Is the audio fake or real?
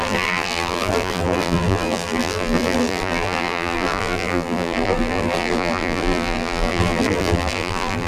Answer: fake